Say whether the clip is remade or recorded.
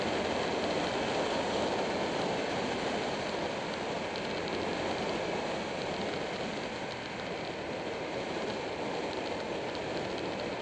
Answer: recorded